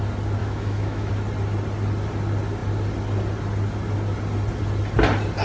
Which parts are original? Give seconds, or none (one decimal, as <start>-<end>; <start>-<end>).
0.0-0.4; 1.1-5.4

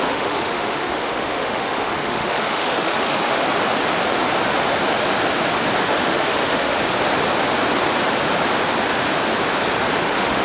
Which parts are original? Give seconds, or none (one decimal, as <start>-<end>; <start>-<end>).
3.4-5.8; 6.8-10.0

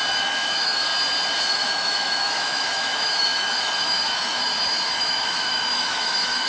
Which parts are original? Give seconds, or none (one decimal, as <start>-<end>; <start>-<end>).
0.9-1.5

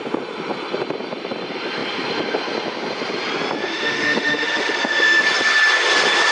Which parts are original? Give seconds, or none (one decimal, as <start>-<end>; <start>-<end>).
0.0-3.6; 5.2-6.3